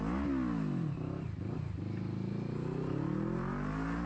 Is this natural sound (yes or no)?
yes